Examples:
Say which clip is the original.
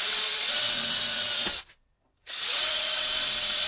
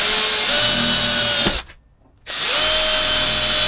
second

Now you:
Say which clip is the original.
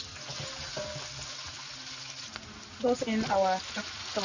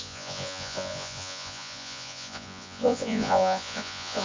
first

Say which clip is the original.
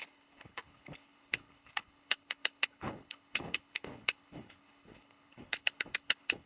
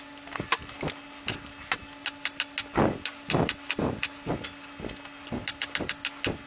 second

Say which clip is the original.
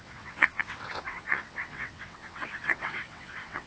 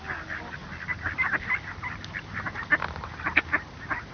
second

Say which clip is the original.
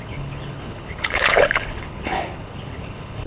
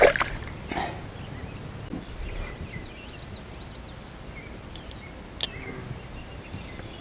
second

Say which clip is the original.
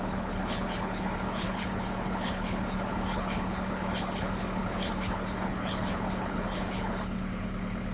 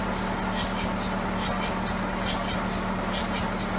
second